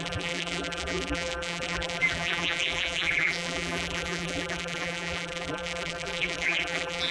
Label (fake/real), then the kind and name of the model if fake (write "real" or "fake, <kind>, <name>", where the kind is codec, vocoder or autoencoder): fake, vocoder, BigVGAN v2